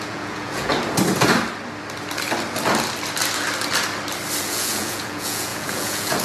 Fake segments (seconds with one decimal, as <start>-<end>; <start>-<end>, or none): 0.0-0.7; 4.4-6.2